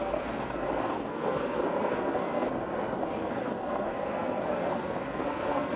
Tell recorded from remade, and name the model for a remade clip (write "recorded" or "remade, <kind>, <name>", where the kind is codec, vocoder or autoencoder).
remade, codec, SNAC